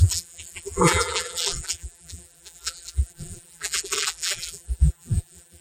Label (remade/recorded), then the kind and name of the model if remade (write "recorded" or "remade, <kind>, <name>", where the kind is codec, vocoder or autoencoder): remade, vocoder, BigVGAN v2